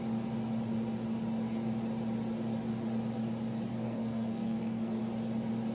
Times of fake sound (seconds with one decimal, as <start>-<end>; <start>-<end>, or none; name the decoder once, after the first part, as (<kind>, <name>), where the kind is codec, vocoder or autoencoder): 3.7-5.0 (codec, SNAC)